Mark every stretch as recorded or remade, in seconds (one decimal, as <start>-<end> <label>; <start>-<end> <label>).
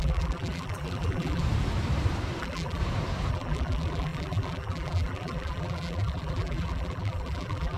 0.0-1.4 remade; 1.4-2.4 recorded; 2.4-2.8 remade; 2.8-3.3 recorded; 3.3-7.8 remade